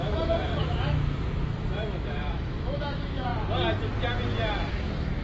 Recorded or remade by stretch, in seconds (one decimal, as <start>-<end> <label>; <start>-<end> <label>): 0.0-3.3 remade; 3.3-4.7 recorded; 4.7-5.2 remade